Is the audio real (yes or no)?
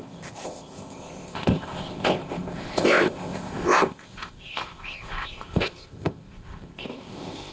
no